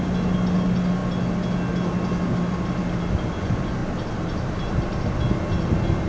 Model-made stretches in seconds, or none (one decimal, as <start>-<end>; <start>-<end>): 3.8-5.2